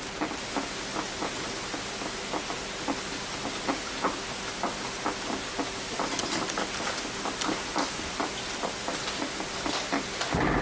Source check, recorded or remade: recorded